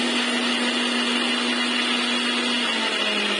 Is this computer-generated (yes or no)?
no